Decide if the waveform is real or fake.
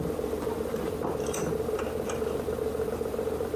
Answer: fake